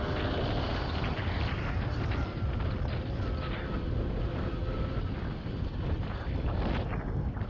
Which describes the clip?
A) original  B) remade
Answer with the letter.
A